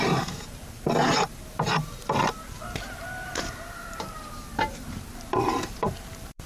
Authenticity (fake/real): fake